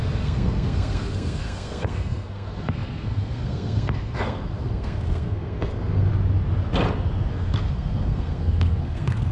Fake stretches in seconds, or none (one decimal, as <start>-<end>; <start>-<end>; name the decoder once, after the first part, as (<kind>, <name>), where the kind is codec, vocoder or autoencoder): 0.0-6.1 (codec, SNAC); 7.3-9.3